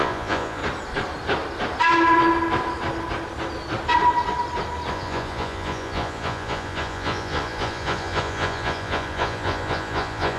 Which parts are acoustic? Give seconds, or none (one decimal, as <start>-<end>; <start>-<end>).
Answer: 0.6-4.9